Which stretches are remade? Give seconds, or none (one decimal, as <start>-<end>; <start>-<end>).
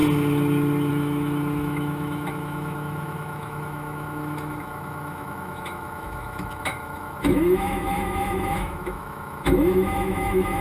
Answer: 0.9-10.6